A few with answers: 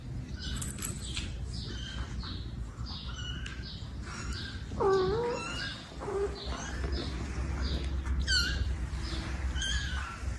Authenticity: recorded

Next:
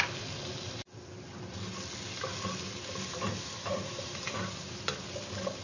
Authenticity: recorded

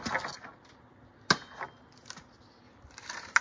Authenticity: recorded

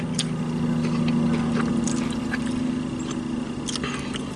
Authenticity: recorded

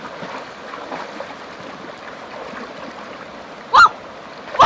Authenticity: recorded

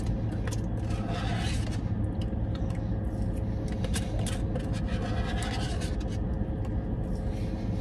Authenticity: recorded